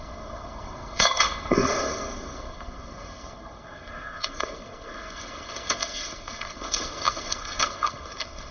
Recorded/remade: remade